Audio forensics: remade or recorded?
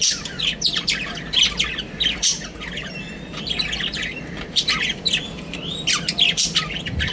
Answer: remade